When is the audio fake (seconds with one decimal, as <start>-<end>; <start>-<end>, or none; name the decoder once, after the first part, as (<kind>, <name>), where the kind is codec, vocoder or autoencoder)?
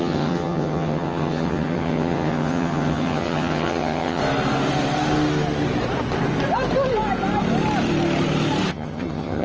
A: 0.0-4.2 (vocoder, HiFi-GAN); 8.7-9.4